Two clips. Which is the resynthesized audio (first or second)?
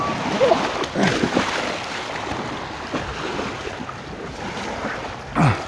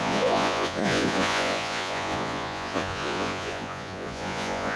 second